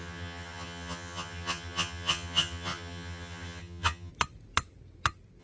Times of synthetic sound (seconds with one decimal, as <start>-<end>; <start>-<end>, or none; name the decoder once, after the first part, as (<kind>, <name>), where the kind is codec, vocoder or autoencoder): 0.0-4.1 (vocoder, HiFi-GAN)